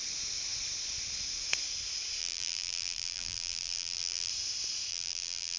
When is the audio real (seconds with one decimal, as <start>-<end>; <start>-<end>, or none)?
0.0-2.2; 4.3-4.9